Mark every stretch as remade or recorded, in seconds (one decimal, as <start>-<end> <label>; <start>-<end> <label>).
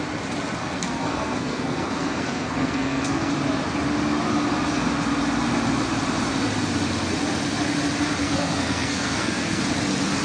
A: 0.0-0.6 recorded; 0.6-3.3 remade; 3.3-8.2 recorded; 8.2-9.6 remade; 9.6-10.2 recorded